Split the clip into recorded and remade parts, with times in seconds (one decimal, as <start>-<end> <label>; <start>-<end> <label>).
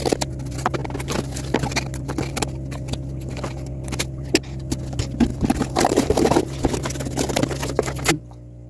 0.0-5.3 recorded; 5.3-6.4 remade; 6.4-8.7 recorded